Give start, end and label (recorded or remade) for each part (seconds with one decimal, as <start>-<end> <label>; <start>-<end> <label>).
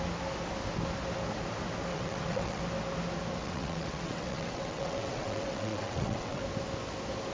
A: 0.0-1.9 recorded; 1.9-2.6 remade; 2.6-3.4 recorded; 3.4-6.4 remade; 6.4-7.3 recorded